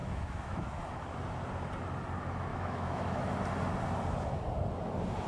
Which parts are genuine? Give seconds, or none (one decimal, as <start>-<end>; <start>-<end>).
0.8-2.5; 3.3-5.3